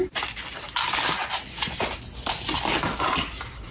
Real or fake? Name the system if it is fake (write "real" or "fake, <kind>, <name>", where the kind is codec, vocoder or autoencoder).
real